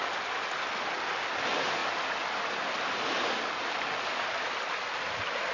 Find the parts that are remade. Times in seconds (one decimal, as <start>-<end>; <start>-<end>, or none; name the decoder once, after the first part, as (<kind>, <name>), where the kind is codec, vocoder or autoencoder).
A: none